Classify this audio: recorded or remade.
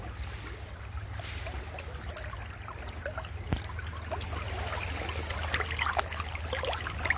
recorded